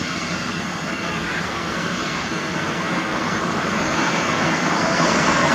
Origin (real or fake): fake